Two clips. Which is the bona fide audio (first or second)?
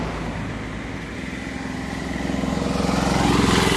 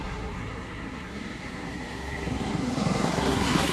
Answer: first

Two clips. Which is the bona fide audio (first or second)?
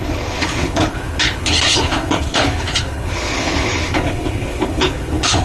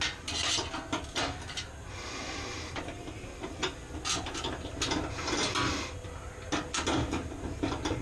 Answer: second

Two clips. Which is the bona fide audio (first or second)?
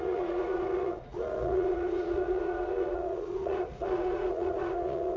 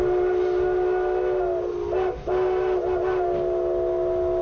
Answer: second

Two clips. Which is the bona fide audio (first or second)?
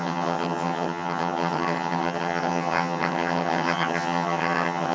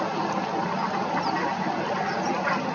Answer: second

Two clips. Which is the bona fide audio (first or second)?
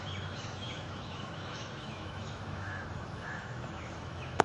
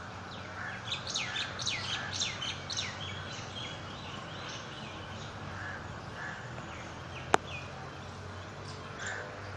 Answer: second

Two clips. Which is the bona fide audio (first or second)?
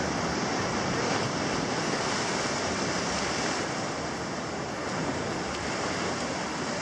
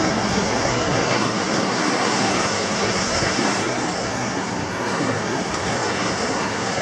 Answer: first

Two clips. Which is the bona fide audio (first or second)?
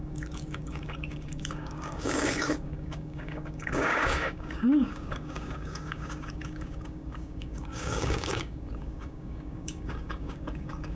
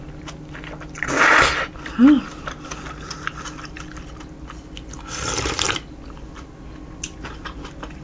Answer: second